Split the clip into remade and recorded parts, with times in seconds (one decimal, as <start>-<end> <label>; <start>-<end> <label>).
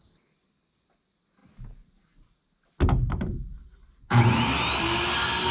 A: 0.0-5.5 recorded